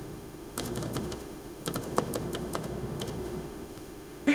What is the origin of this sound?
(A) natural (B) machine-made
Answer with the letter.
B